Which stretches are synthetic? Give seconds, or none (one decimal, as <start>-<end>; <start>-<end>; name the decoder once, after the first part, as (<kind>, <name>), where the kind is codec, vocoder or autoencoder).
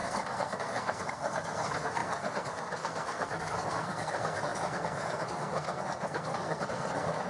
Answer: 0.0-7.3 (codec, SNAC)